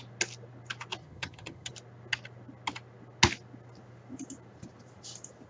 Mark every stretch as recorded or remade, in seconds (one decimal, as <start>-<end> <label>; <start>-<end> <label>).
0.0-1.0 recorded; 1.0-1.7 remade; 1.7-5.5 recorded